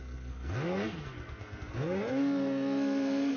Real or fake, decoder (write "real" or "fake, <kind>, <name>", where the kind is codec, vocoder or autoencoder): fake, codec, SNAC